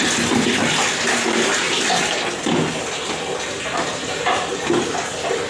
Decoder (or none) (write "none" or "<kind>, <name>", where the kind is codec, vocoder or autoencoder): none